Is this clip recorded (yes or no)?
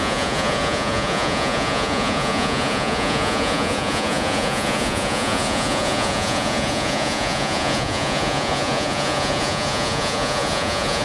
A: no